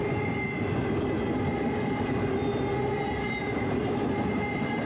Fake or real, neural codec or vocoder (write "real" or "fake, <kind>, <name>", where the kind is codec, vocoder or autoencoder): real